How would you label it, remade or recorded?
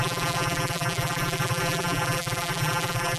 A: remade